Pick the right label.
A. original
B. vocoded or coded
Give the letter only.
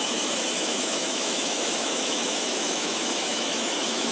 B